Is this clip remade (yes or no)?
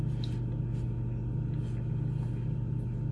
no